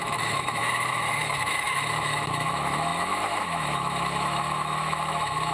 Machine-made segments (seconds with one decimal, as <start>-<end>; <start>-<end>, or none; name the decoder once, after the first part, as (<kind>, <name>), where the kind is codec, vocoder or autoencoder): 0.0-5.5 (autoencoder, DAC-VAE)